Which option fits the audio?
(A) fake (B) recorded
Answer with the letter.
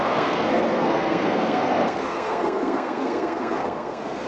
A